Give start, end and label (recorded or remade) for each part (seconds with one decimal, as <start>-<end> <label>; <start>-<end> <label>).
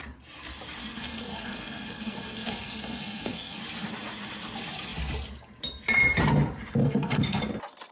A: 0.0-0.8 recorded; 0.8-3.6 remade; 3.6-6.8 recorded; 6.8-7.4 remade; 7.4-7.9 recorded